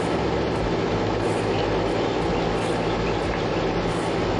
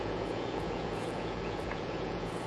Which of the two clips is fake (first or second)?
second